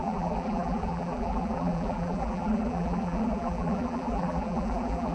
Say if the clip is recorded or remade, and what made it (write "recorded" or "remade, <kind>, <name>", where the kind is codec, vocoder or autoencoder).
remade, vocoder, BigVGAN v2